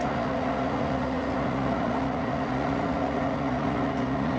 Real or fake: fake